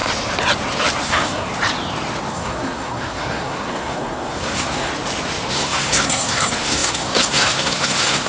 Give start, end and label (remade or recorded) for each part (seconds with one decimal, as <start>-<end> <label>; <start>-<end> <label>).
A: 0.0-1.0 recorded; 1.0-1.5 remade; 1.5-2.3 recorded; 2.3-4.9 remade; 4.9-5.5 recorded; 5.5-8.3 remade